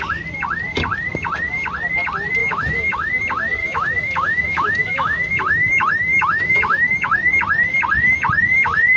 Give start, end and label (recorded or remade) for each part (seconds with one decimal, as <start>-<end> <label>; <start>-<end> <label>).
0.0-2.4 recorded; 2.4-3.1 remade; 3.1-3.6 recorded; 3.6-7.3 remade; 7.3-9.0 recorded